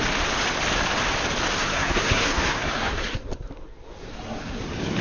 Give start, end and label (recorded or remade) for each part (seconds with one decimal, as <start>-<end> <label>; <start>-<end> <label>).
0.0-1.6 recorded; 1.6-4.6 remade; 4.6-5.0 recorded